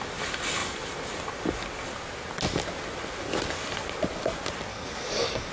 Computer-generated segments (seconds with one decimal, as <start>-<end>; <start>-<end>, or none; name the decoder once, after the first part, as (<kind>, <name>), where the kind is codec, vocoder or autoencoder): 4.7-5.5 (codec, DAC)